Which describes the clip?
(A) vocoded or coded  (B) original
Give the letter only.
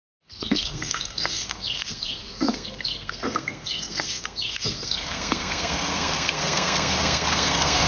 A